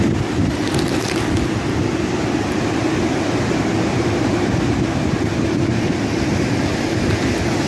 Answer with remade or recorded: recorded